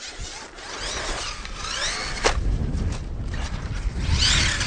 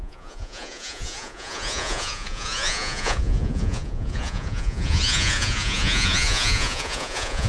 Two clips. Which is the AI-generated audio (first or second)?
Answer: second